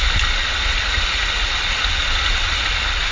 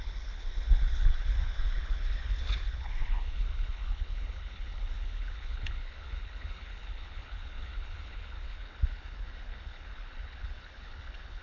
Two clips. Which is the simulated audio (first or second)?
second